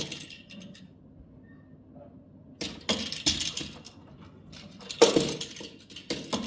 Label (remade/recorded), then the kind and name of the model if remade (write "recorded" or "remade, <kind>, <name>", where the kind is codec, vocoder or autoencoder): recorded